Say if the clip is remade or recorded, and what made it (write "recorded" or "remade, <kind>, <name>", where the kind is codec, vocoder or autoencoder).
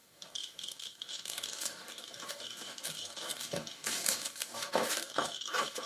remade, codec, DAC